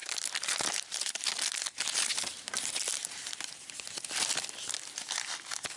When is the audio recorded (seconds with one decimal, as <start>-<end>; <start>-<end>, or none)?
0.0-5.8